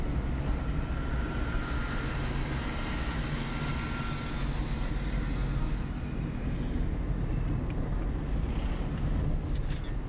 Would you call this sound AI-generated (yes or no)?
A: no